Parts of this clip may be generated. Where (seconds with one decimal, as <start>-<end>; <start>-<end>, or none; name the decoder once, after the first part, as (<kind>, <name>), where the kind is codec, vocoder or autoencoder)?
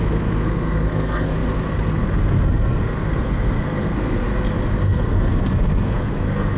0.0-4.3 (codec, SNAC); 4.8-6.6